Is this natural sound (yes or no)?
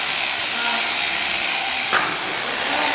yes